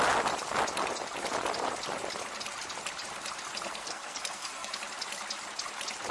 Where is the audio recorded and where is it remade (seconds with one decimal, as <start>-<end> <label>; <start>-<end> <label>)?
0.0-3.7 recorded; 3.7-4.8 remade; 4.8-6.1 recorded